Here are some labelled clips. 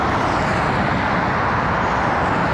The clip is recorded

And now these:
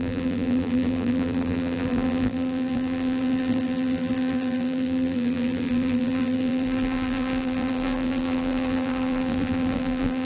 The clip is remade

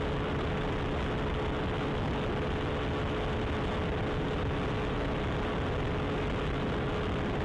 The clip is recorded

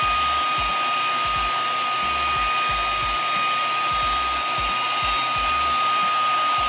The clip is recorded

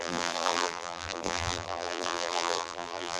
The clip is remade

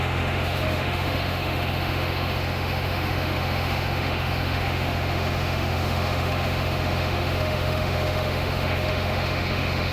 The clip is remade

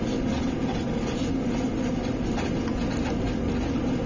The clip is recorded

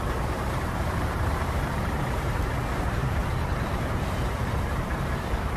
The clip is remade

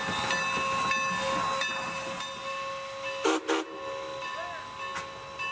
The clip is recorded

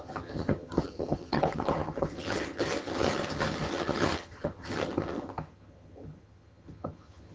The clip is remade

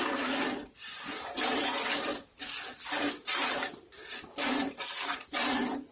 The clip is remade